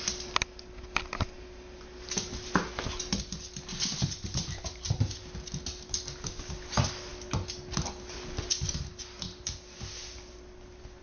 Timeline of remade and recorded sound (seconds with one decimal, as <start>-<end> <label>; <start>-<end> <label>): 0.0-11.0 recorded